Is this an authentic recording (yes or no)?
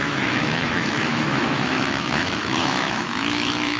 no